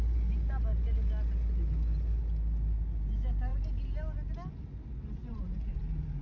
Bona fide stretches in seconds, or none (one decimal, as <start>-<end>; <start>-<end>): 0.0-5.2; 5.8-6.2